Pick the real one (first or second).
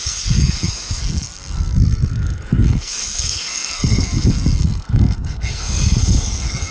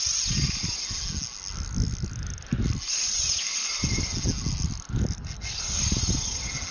second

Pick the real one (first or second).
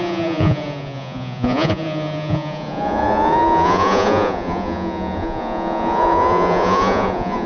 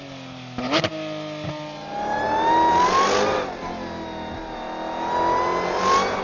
second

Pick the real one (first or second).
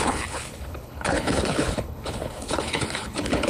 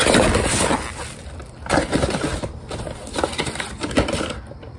second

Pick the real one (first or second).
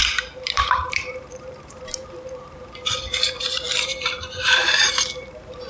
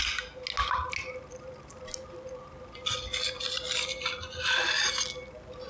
second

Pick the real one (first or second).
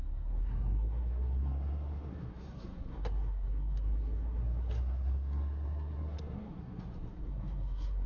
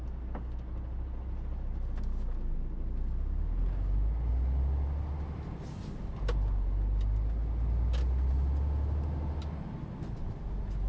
second